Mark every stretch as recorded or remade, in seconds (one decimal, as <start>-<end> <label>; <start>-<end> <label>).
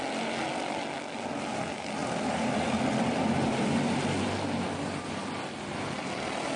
0.0-6.6 recorded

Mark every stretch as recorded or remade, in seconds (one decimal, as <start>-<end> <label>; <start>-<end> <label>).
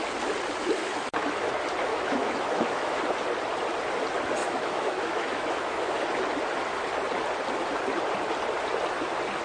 0.0-0.8 recorded; 0.8-1.5 remade; 1.5-1.9 recorded; 1.9-3.0 remade; 3.0-4.4 recorded; 4.4-6.0 remade; 6.0-9.4 recorded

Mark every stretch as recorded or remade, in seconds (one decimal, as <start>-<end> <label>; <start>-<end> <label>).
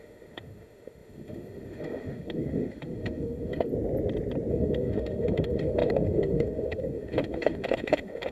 0.0-3.7 remade; 3.7-4.5 recorded; 4.5-8.3 remade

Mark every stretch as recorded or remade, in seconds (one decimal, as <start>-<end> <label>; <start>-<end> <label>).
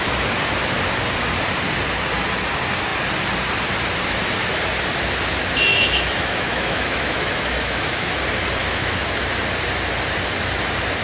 0.0-5.7 recorded; 5.7-8.2 remade; 8.2-8.6 recorded; 8.6-9.2 remade; 9.2-11.0 recorded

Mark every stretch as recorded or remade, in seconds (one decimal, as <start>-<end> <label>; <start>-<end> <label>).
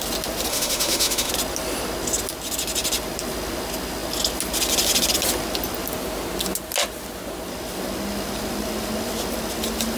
0.0-0.5 recorded; 0.5-1.3 remade; 1.3-10.0 recorded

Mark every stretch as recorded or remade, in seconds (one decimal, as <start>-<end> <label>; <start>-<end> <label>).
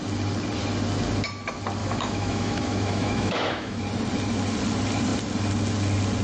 0.0-1.8 recorded; 1.8-3.8 remade; 3.8-6.2 recorded